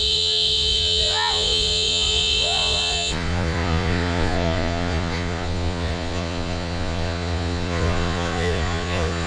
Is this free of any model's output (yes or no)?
no